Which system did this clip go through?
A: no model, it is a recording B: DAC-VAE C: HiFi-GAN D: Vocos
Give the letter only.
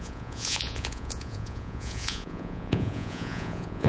D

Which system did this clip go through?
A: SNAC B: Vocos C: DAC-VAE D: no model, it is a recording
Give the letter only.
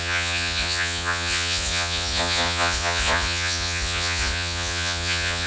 B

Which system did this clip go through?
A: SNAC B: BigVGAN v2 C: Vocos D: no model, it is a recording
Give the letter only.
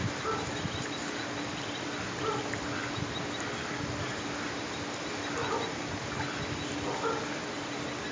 D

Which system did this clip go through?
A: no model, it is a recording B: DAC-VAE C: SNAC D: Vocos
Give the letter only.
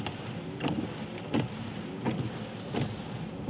A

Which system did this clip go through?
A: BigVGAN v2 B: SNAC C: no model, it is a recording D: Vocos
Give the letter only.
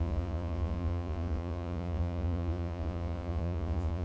D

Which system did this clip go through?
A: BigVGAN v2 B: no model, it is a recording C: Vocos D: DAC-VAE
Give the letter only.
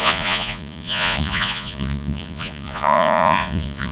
C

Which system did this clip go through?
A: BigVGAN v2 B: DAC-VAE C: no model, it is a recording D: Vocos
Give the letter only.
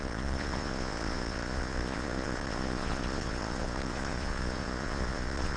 D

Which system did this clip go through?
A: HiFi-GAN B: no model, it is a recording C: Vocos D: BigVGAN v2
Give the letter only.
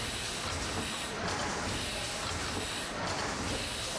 B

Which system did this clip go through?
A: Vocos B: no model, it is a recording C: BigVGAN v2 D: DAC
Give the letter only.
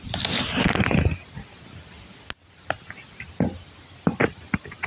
B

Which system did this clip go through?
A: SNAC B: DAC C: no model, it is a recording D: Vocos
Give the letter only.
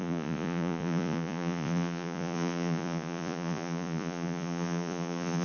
D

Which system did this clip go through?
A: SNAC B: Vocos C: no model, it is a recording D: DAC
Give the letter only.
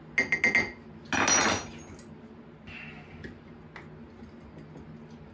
C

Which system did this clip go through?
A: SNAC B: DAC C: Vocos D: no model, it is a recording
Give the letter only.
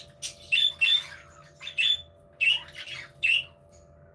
D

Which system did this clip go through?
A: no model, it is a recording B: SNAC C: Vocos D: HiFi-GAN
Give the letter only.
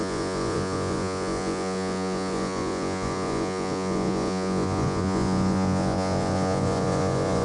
C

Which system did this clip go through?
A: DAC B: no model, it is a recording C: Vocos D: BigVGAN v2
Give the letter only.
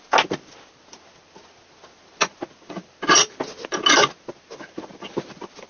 B